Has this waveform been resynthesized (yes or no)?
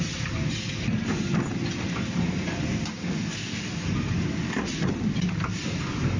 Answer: no